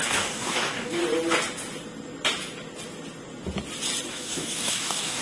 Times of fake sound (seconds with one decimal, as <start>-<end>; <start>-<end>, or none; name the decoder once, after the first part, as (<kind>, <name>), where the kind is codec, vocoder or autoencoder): 0.0-1.0 (codec, DAC); 4.1-5.2